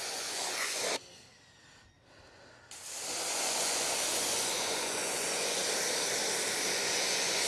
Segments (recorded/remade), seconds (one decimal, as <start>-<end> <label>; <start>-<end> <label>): 0.0-0.8 remade; 0.8-3.3 recorded; 3.3-5.6 remade; 5.6-6.7 recorded; 6.7-7.5 remade